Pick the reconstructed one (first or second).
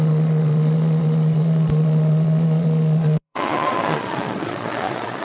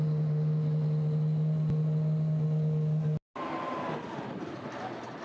first